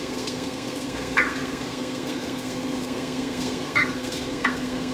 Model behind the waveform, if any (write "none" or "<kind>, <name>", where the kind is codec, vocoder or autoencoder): codec, SNAC